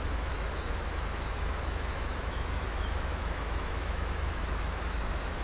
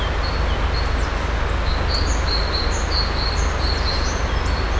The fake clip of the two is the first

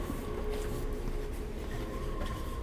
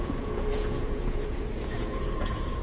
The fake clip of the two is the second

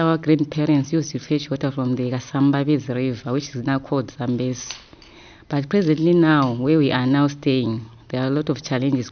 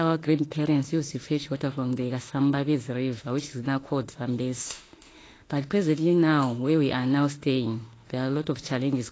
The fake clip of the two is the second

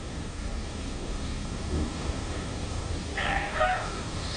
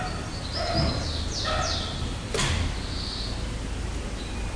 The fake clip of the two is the first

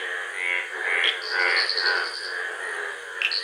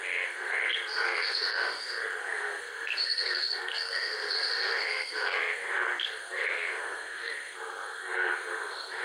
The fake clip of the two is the second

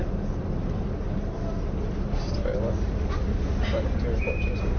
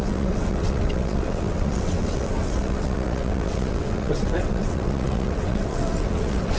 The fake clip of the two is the second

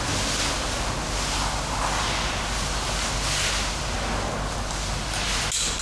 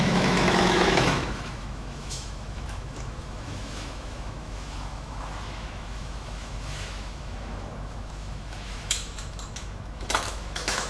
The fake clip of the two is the second